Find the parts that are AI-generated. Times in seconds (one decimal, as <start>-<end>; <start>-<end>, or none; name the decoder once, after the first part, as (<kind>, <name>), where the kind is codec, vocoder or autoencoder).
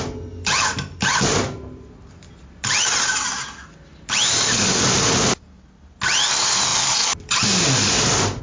none